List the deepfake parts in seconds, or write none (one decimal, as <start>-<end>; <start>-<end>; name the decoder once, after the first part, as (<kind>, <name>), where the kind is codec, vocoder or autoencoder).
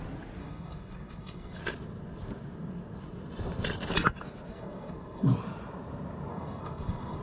0.4-1.6 (codec, SNAC); 4.5-5.3; 6.3-7.2